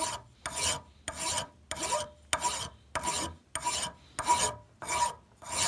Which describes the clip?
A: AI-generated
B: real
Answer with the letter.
B